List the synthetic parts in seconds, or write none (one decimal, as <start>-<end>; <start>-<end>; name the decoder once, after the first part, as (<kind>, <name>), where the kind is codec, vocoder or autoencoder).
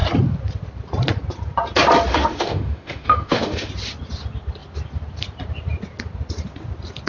2.1-3.7 (autoencoder, DAC-VAE)